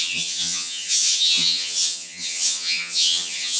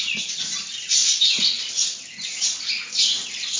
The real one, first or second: second